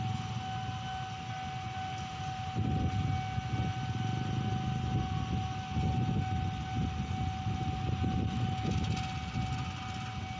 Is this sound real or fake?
real